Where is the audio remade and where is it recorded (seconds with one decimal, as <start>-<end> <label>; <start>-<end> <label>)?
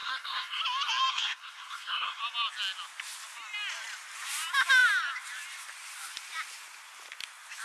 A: 0.0-0.6 remade; 0.6-1.1 recorded; 1.1-2.2 remade; 2.2-7.6 recorded